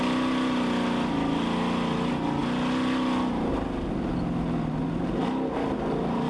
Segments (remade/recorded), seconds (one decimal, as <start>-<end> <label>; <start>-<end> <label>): 0.0-6.3 recorded

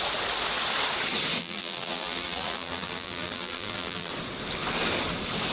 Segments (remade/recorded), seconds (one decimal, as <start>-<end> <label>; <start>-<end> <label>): 0.0-1.4 recorded; 1.4-4.1 remade; 4.1-5.5 recorded

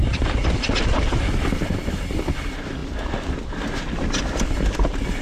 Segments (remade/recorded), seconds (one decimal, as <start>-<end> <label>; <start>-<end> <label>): 0.0-0.4 recorded; 0.4-1.1 remade; 1.1-5.2 recorded

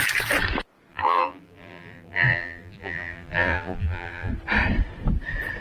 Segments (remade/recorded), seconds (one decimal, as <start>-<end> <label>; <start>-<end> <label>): 0.0-0.9 recorded; 0.9-4.3 remade; 4.3-5.6 recorded

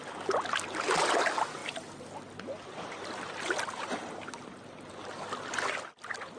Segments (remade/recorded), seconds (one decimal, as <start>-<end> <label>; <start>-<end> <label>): 0.0-6.4 recorded

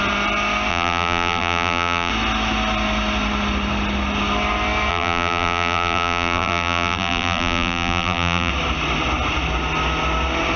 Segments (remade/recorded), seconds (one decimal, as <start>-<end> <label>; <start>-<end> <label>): 0.0-0.7 recorded; 0.7-2.1 remade; 2.1-4.9 recorded; 4.9-8.5 remade; 8.5-10.6 recorded

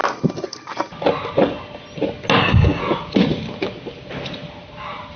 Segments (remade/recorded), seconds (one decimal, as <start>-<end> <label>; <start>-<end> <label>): 0.0-2.4 recorded; 2.4-2.8 remade; 2.8-5.2 recorded

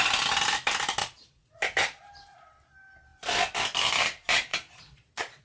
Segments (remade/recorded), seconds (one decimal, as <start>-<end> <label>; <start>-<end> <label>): 0.0-1.0 recorded; 1.0-1.5 remade; 1.5-4.5 recorded; 4.5-5.4 remade